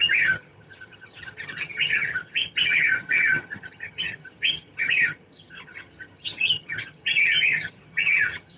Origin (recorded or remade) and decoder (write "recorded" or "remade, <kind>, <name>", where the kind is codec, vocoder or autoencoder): remade, vocoder, HiFi-GAN